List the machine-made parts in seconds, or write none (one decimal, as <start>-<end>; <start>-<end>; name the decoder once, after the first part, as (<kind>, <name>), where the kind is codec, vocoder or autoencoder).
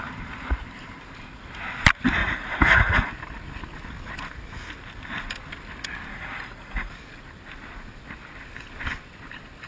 2.2-3.1 (vocoder, Vocos); 6.1-6.9